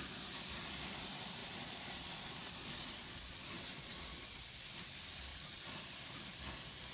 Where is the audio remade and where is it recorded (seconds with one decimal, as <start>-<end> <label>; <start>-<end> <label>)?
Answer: 0.0-1.4 recorded; 1.4-4.6 remade; 4.6-5.3 recorded; 5.3-6.0 remade; 6.0-6.9 recorded